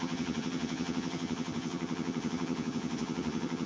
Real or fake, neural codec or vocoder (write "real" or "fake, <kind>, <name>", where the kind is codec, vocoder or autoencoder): fake, vocoder, HiFi-GAN